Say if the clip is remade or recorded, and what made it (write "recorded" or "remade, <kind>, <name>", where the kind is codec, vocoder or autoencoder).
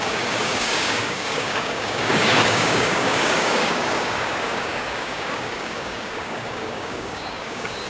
remade, codec, DAC